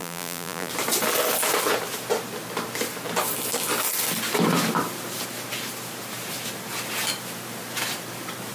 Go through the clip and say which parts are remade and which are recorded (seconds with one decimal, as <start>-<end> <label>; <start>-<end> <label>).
0.0-0.7 remade; 0.7-8.5 recorded